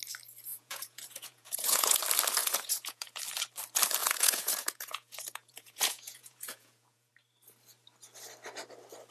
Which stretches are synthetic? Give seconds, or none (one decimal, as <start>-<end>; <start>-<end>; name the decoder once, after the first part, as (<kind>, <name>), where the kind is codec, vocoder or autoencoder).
0.5-2.0 (vocoder, Vocos); 2.4-3.2; 4.0-7.1